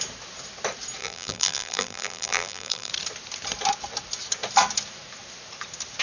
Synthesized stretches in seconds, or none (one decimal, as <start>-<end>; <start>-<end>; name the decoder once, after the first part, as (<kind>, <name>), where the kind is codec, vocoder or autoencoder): 1.0-2.9 (vocoder, BigVGAN v2)